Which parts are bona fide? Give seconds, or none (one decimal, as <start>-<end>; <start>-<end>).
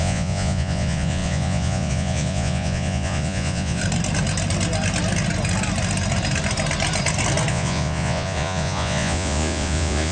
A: 3.8-7.5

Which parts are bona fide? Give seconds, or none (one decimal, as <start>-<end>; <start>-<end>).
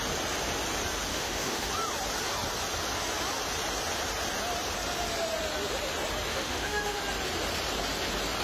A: 0.0-1.1; 1.7-6.3; 7.0-8.4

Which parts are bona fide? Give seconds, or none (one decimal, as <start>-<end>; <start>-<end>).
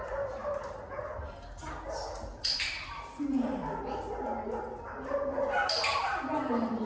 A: 0.0-6.9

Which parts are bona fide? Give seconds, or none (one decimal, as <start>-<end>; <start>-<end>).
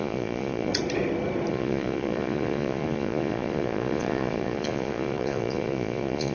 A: 0.7-1.5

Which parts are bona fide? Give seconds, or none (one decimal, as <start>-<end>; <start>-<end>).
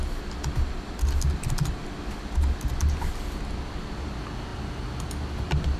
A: 0.0-5.8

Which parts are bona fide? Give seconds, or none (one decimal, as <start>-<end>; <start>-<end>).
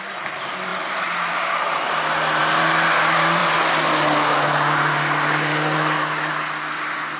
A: 0.0-0.7; 1.8-2.4; 2.9-7.2